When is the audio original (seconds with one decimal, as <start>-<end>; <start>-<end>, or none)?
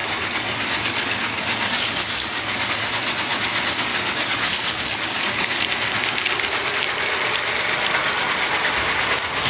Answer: 2.7-3.9; 5.6-9.5